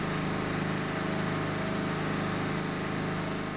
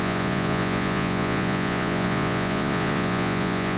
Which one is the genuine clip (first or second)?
first